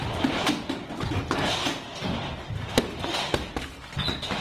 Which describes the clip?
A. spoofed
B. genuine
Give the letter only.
B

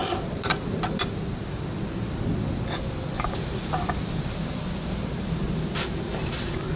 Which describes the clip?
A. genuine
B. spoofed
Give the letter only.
A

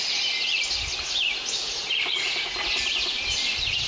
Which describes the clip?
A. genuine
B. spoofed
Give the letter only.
A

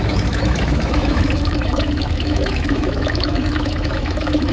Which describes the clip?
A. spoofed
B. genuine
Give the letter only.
A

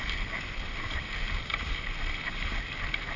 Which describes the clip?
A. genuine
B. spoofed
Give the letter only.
A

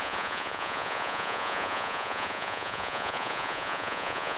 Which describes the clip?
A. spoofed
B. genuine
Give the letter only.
A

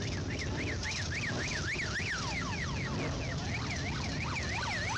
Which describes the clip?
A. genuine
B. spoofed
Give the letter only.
A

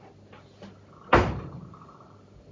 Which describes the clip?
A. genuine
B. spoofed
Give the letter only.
A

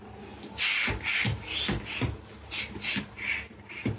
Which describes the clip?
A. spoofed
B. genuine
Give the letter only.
B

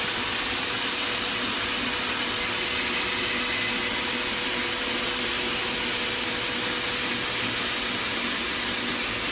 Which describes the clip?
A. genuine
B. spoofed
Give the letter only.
A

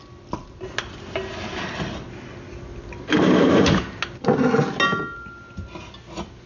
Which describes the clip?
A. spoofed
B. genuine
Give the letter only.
B